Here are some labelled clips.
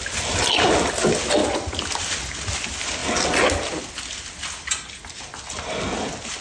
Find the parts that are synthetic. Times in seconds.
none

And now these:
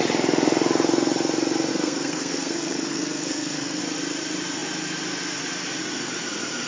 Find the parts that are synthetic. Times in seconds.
1.7-3.8

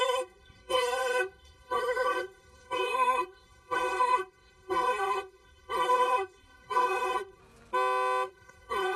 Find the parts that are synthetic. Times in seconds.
0.0-7.4; 8.3-9.0